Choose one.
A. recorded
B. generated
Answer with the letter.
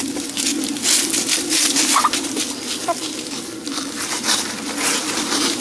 A